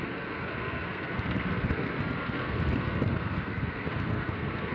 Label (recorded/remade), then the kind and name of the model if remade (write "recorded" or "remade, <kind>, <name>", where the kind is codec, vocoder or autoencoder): remade, codec, SNAC